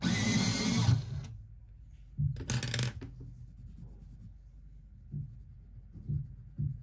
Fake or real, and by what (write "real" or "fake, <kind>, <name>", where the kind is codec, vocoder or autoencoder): real